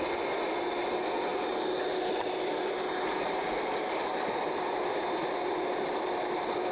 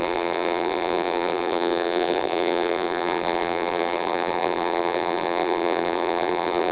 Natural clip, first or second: first